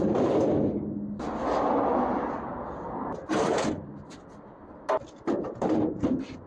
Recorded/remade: recorded